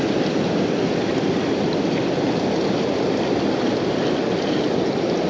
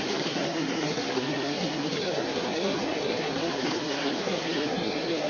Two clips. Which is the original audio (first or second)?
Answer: first